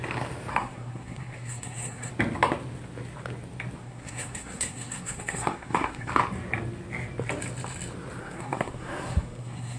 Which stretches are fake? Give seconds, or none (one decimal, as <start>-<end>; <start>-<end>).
0.5-2.1; 3.8-6.1; 8.2-9.8

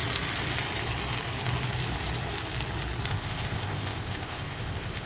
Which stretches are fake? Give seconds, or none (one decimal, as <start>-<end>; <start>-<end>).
3.1-5.1

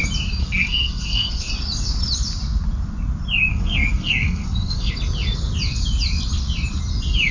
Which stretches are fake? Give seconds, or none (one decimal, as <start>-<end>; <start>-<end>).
0.4-1.5; 3.5-4.9

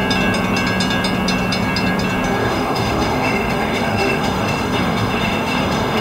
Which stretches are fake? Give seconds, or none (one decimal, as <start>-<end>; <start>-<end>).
2.4-6.0

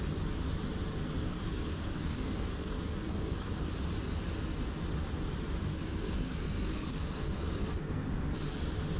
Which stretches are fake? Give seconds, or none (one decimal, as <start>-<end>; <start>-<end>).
1.2-3.7; 5.7-8.1

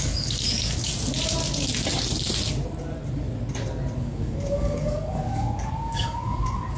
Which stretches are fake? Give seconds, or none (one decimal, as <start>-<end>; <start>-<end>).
0.0-0.9; 4.0-6.8

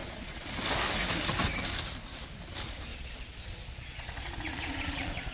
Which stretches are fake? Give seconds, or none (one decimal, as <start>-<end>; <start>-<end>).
0.0-0.5; 2.9-5.3

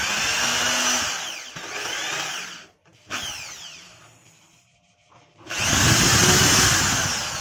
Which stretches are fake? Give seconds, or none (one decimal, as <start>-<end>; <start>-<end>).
2.9-6.2